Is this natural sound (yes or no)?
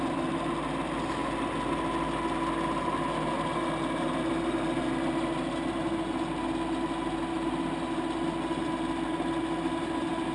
yes